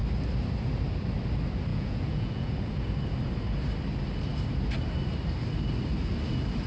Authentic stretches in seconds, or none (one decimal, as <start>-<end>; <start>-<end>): 0.0-1.7; 2.7-6.7